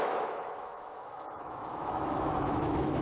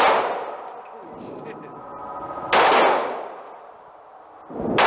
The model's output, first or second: first